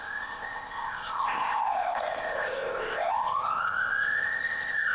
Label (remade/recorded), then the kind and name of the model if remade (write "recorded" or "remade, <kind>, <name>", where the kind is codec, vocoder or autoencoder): remade, codec, ZipCodec